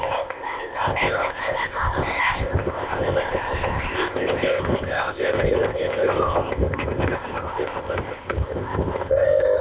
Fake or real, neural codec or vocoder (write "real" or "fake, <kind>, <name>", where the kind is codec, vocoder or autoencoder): fake, codec, ZipCodec